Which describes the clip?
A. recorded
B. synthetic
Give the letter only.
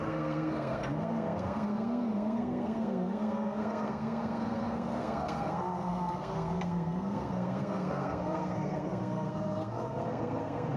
B